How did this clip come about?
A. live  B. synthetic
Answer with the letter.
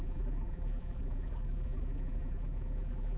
B